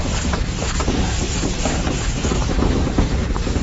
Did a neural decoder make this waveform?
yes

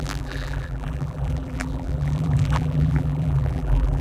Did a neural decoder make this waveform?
yes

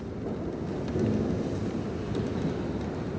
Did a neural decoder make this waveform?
no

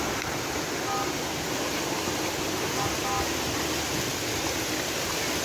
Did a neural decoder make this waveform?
no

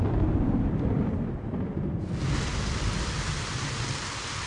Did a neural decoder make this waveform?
no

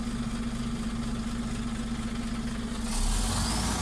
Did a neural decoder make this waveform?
no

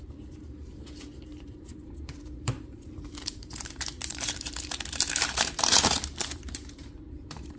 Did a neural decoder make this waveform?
yes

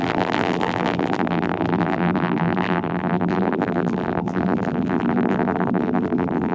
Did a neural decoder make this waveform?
yes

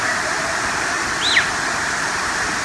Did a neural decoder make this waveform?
yes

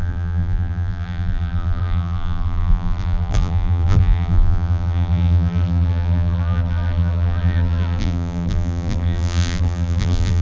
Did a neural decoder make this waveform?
yes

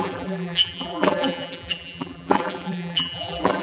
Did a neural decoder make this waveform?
yes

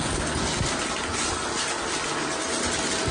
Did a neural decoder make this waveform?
no